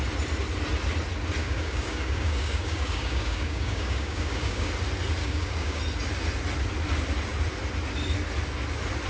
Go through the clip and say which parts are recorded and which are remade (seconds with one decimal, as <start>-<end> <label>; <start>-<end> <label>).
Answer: 0.0-1.4 recorded; 1.4-4.7 remade; 4.7-5.2 recorded; 5.2-5.8 remade; 5.8-9.1 recorded